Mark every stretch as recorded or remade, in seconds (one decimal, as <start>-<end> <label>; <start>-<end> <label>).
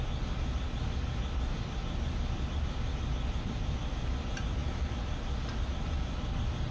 0.0-6.7 recorded